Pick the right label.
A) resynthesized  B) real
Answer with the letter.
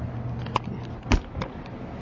B